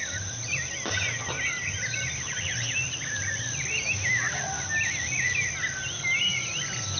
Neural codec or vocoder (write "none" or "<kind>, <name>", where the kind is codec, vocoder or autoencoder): none